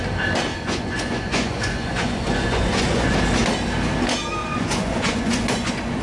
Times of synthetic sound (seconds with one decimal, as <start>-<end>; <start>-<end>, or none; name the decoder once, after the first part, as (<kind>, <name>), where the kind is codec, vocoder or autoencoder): 0.5-3.1 (vocoder, Vocos); 4.4-6.0